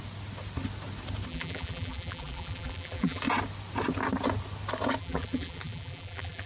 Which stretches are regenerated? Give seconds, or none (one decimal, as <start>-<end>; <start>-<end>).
1.3-3.2; 5.0-6.5